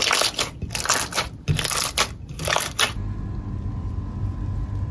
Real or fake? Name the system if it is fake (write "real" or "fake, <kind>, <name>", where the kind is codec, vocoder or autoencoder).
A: real